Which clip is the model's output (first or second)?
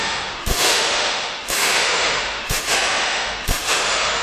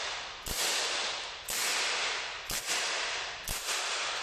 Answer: first